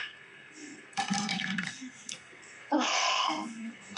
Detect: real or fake fake